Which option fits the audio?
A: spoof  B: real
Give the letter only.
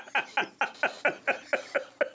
B